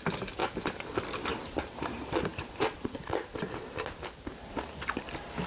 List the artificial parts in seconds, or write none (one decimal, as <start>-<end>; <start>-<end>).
0.4-0.9; 1.3-3.3